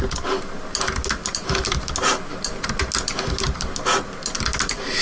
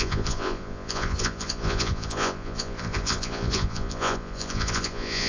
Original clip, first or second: first